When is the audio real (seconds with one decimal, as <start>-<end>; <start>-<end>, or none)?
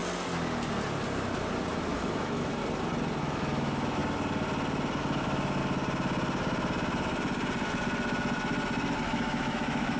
0.0-1.7; 2.6-3.2; 4.0-5.0; 5.6-9.0